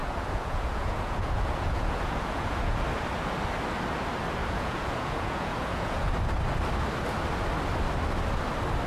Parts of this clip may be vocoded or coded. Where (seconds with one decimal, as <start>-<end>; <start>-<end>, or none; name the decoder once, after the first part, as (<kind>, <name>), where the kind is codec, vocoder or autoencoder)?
0.0-2.8 (vocoder, Vocos); 4.4-6.1